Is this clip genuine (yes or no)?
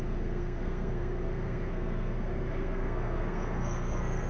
no